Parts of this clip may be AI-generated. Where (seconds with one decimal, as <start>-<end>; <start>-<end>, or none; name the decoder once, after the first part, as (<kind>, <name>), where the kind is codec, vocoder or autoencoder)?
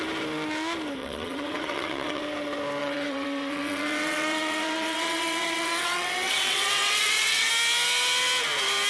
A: 1.0-2.2 (vocoder, WaveNeXt); 2.8-7.5